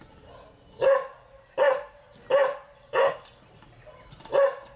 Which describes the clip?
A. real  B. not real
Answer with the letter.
A